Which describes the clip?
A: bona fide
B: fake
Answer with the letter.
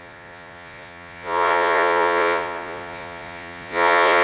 B